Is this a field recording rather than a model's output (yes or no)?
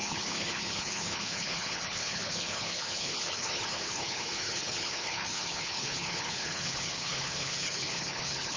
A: no